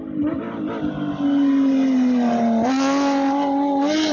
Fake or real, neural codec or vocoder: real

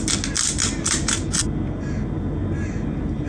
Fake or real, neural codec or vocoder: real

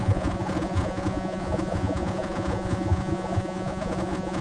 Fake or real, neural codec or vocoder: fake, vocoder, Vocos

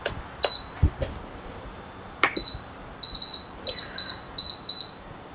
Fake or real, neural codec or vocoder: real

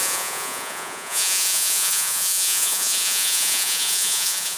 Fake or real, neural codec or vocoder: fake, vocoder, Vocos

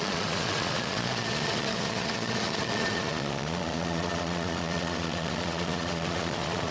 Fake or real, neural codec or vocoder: fake, vocoder, Vocos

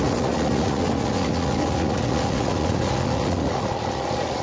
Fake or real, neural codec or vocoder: fake, vocoder, Vocos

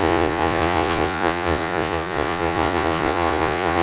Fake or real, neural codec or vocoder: fake, vocoder, Vocos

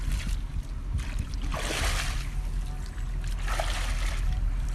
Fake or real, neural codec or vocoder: real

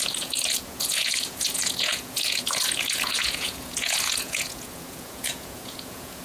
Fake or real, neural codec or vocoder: fake, vocoder, Vocos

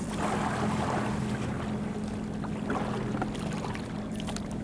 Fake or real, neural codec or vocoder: real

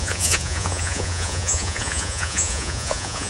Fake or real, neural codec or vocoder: fake, vocoder, Vocos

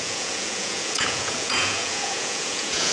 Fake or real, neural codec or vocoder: fake, vocoder, Vocos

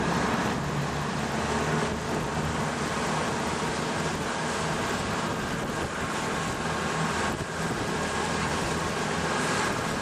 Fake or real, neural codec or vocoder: real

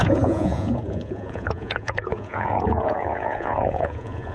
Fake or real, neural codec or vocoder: fake, vocoder, Vocos